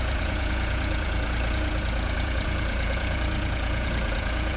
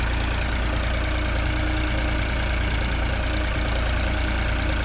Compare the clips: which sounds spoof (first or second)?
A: first